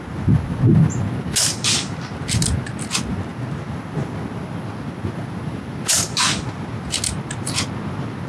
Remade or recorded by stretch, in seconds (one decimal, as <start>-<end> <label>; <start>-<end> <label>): 0.0-8.3 recorded